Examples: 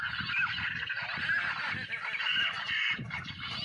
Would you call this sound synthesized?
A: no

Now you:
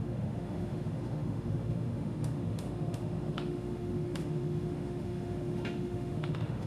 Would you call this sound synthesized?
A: yes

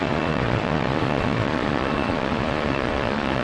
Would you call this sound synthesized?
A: yes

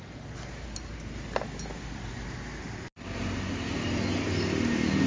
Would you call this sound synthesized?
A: no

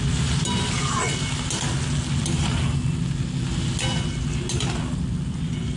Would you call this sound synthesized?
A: no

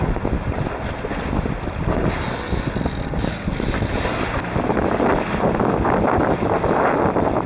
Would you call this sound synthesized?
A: no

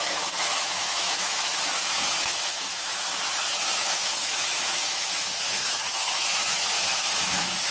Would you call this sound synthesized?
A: yes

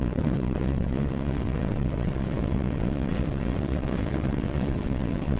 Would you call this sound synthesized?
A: yes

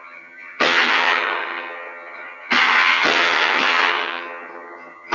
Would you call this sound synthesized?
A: yes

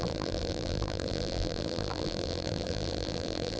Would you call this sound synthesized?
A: yes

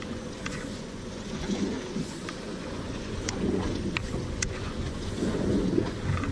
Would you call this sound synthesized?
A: yes